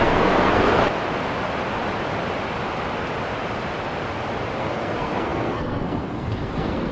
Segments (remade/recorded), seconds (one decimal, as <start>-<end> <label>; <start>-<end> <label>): 0.0-0.8 remade; 0.8-4.6 recorded; 4.6-6.9 remade

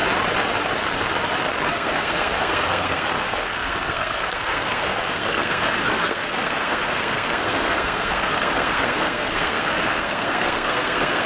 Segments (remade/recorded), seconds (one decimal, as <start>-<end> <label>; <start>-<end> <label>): 0.0-1.7 recorded; 1.7-11.3 remade

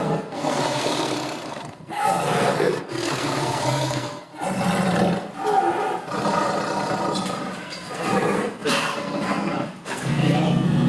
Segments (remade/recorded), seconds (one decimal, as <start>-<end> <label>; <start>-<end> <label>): 0.0-4.3 remade; 4.3-7.6 recorded; 7.6-10.9 remade

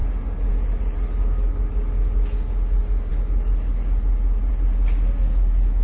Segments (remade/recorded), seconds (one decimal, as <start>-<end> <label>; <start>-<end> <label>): 0.0-5.8 recorded

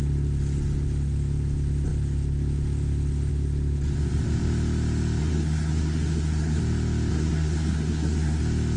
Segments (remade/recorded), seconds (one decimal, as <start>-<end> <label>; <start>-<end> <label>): 0.0-5.2 recorded; 5.2-6.6 remade; 6.6-7.1 recorded; 7.1-8.4 remade; 8.4-8.8 recorded